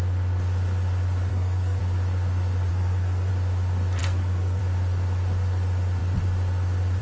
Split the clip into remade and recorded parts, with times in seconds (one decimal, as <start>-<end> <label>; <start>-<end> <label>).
0.0-1.3 recorded; 1.3-1.8 remade; 1.8-2.7 recorded; 2.7-3.3 remade; 3.3-4.0 recorded; 4.0-4.6 remade; 4.6-7.0 recorded